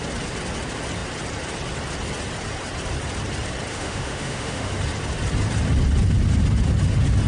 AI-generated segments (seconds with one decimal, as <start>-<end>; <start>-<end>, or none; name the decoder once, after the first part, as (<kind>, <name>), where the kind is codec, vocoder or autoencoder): 3.7-4.7 (autoencoder, DAC-VAE)